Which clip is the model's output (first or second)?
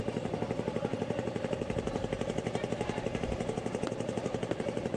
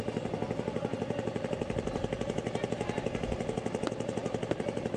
first